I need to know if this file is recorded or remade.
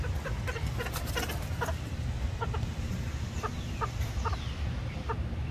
recorded